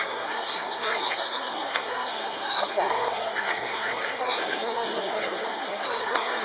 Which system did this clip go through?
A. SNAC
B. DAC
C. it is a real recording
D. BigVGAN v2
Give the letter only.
A